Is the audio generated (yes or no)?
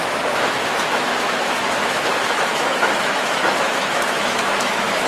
yes